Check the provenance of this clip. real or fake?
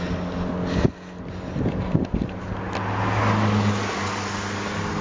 real